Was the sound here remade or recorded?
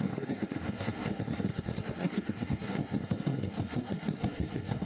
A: remade